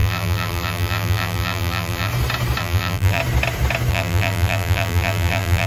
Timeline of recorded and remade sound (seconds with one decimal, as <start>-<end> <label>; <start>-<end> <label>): 0.0-2.1 remade; 2.1-2.6 recorded; 2.6-3.2 remade; 3.2-3.9 recorded; 3.9-5.7 remade